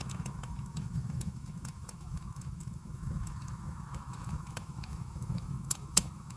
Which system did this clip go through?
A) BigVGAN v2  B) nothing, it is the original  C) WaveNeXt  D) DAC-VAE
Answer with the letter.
D